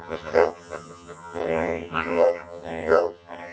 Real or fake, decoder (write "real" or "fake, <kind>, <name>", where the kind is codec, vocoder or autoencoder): fake, vocoder, HiFi-GAN